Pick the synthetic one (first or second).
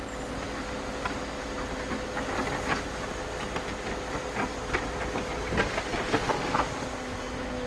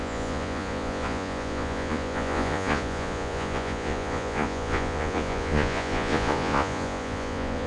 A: second